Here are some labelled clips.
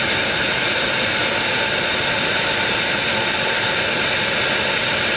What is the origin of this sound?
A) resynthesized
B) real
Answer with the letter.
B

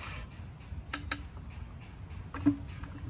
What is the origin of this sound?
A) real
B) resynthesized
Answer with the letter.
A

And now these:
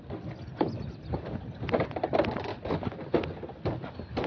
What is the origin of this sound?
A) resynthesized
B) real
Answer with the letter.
B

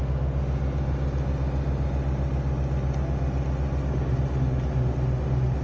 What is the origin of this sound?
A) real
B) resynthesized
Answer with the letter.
A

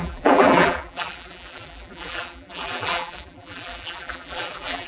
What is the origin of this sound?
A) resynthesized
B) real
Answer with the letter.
A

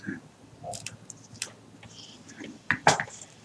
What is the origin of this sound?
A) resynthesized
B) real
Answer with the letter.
A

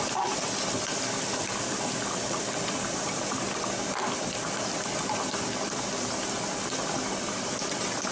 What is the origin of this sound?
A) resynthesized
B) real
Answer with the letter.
A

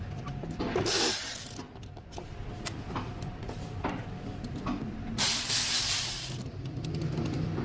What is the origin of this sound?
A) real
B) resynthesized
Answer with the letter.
B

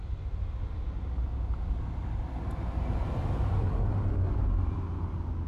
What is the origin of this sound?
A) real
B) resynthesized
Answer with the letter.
A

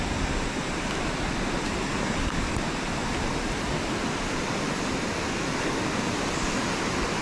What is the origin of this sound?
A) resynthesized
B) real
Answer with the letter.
A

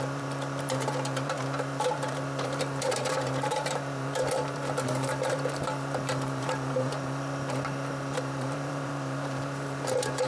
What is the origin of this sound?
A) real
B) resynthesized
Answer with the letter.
B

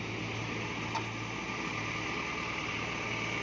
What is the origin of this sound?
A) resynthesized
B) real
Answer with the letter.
B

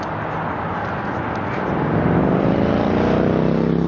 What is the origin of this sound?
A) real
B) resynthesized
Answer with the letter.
A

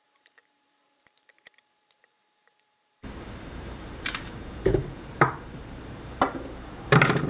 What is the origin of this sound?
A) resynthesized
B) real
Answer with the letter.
A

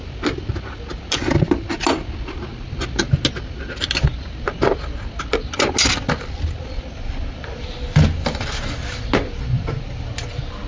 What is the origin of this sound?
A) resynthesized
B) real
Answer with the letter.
B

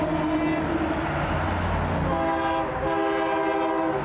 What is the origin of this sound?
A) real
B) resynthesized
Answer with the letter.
A